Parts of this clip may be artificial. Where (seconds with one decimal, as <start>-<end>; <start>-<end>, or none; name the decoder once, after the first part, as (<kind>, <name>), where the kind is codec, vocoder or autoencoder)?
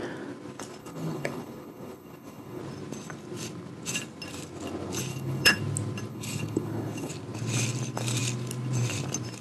0.8-2.6 (codec, HILCodec); 5.1-5.6; 6.1-7.1